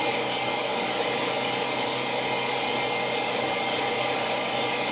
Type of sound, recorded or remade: remade